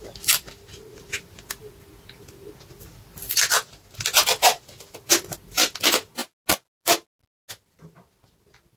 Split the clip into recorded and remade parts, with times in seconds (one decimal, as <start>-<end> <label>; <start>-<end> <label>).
0.0-8.8 recorded